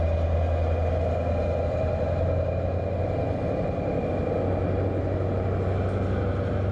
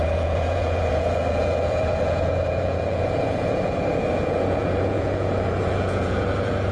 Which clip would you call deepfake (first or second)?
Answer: second